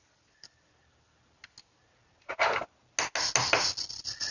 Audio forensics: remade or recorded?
recorded